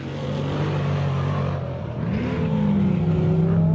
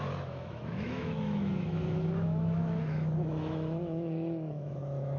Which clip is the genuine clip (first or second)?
first